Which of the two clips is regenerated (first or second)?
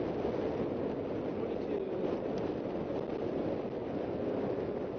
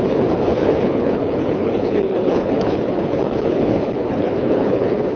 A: second